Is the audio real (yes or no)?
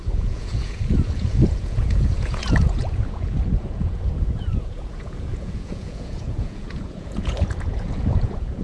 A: no